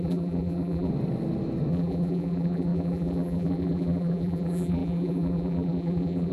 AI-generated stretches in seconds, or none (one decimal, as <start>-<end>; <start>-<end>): 0.0-0.9; 1.7-6.3